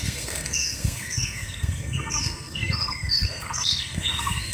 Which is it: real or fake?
fake